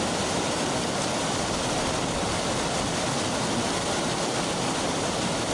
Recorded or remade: recorded